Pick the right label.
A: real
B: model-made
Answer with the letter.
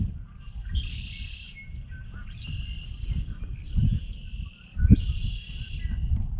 A